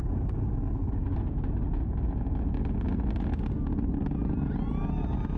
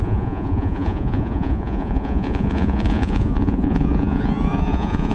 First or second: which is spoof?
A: second